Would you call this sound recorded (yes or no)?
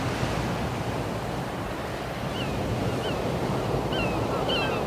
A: yes